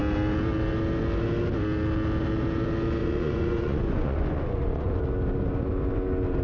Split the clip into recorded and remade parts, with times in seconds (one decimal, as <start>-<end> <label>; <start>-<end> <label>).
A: 0.0-3.0 recorded; 3.0-5.0 remade; 5.0-6.4 recorded